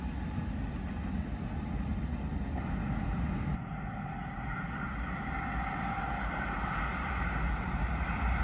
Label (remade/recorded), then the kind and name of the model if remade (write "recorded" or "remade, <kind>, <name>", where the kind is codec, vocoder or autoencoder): recorded